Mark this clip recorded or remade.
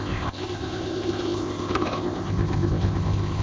remade